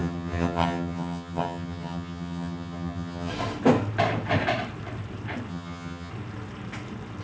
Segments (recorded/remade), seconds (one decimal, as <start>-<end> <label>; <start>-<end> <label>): 0.0-3.3 remade; 3.3-5.5 recorded; 5.5-6.1 remade; 6.1-7.2 recorded